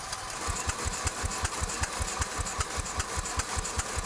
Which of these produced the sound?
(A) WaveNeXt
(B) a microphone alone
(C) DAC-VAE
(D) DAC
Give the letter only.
B